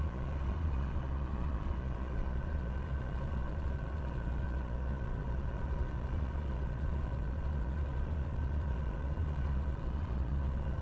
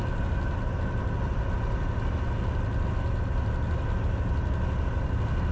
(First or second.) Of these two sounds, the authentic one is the second